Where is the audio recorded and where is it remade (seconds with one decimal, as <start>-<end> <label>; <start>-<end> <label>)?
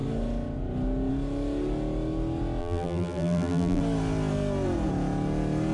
0.0-2.6 recorded; 2.6-3.8 remade; 3.8-5.7 recorded